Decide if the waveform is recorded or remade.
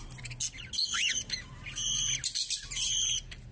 recorded